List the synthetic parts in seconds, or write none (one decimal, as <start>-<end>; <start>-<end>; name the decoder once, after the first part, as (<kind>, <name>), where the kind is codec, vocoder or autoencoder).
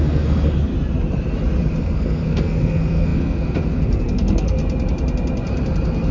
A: 0.0-0.7 (codec, SNAC); 1.8-4.6